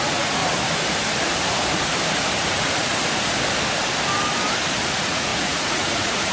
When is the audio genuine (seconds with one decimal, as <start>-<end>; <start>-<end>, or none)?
0.4-2.5; 2.9-4.8